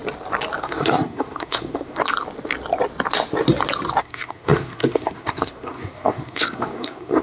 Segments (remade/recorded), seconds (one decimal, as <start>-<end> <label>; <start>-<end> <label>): 0.0-0.6 recorded; 0.6-2.0 remade; 2.0-4.0 recorded; 4.0-7.2 remade